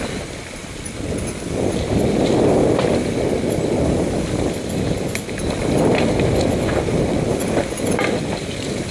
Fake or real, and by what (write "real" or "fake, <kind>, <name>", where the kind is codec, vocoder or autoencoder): real